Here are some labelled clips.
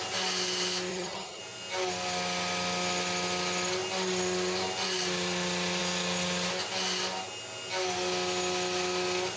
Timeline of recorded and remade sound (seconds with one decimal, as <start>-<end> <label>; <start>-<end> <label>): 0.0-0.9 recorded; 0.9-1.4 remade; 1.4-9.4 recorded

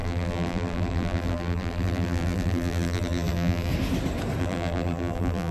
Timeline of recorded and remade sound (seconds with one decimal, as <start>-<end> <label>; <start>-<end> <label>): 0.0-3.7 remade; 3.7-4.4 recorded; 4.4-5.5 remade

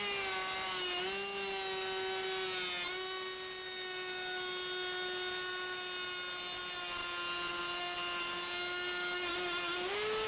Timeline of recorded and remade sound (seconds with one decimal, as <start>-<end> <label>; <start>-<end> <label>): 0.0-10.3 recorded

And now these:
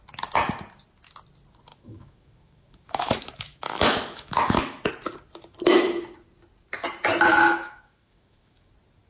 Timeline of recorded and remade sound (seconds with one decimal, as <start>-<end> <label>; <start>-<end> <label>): 0.0-1.7 recorded; 1.7-4.9 remade; 4.9-7.3 recorded; 7.3-8.7 remade; 8.7-9.1 recorded

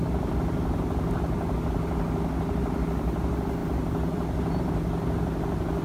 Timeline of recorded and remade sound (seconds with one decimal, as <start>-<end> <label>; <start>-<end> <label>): 0.0-5.8 recorded

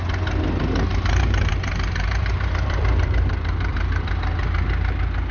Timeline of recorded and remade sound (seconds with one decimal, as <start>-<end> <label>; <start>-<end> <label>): 0.0-0.9 recorded; 0.9-4.1 remade; 4.1-5.3 recorded